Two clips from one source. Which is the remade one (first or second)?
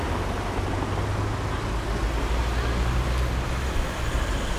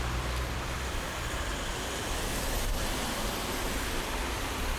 second